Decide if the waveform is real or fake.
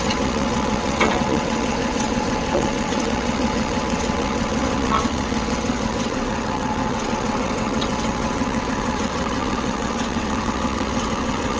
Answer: fake